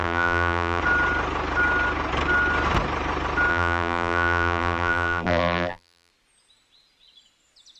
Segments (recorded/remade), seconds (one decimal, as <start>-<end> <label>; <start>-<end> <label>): 0.0-0.8 remade; 0.8-3.5 recorded; 3.5-6.1 remade; 6.1-7.8 recorded

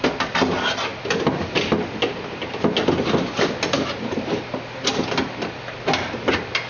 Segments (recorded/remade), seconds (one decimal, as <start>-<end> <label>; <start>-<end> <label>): 0.0-6.7 recorded

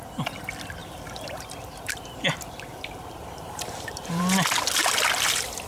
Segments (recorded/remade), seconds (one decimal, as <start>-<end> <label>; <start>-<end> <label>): 0.0-0.8 recorded; 0.8-4.2 remade; 4.2-5.7 recorded

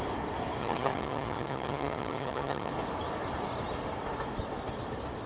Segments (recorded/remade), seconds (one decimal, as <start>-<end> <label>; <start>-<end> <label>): 0.0-0.6 recorded; 0.6-2.7 remade; 2.7-5.3 recorded

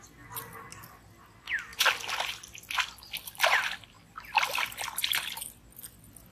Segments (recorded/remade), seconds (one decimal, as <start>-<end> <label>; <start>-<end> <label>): 0.0-6.3 recorded

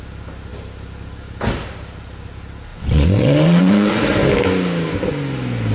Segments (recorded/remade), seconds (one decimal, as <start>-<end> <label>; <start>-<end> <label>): 0.0-2.7 recorded; 2.7-4.0 remade; 4.0-5.7 recorded

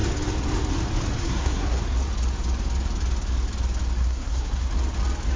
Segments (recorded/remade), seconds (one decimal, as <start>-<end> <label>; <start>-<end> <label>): 0.0-1.2 recorded; 1.2-1.8 remade; 1.8-4.0 recorded; 4.0-4.7 remade; 4.7-5.4 recorded

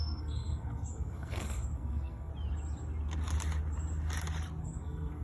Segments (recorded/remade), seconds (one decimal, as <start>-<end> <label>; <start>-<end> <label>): 0.0-2.3 remade; 2.3-4.6 recorded; 4.6-5.2 remade